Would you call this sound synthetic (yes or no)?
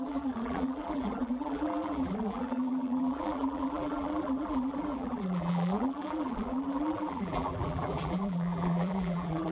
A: yes